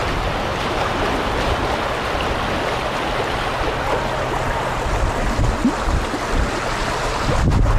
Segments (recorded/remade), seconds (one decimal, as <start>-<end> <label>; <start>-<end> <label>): 0.0-6.8 recorded; 6.8-7.8 remade